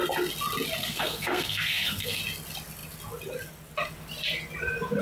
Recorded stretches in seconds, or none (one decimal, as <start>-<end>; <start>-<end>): 0.0-0.8; 2.2-5.0